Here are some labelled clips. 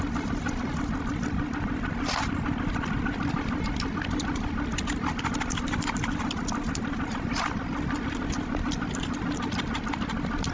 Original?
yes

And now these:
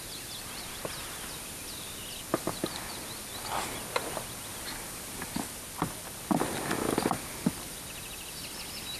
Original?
yes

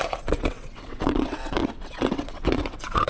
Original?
no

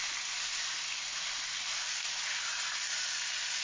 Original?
yes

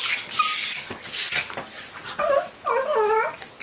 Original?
yes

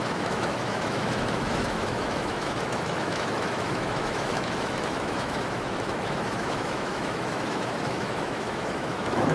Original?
no